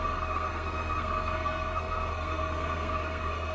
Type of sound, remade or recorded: remade